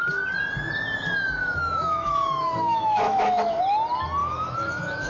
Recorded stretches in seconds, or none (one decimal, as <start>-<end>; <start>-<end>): 0.0-1.4; 3.6-4.2